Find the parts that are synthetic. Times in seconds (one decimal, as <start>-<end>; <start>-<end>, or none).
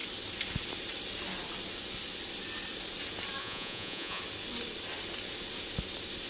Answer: 3.4-4.2